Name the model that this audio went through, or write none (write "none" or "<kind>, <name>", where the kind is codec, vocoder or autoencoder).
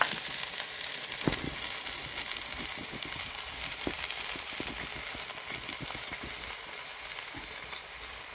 none